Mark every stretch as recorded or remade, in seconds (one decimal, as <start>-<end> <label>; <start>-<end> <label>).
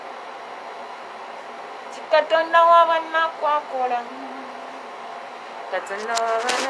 0.0-6.7 recorded